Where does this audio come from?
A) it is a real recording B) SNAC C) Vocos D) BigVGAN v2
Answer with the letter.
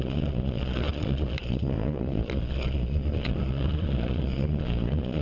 C